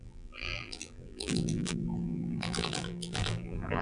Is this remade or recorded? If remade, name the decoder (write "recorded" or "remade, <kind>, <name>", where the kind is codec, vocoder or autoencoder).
remade, vocoder, BigVGAN v2